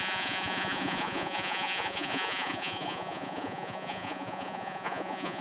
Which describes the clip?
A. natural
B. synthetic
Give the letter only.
B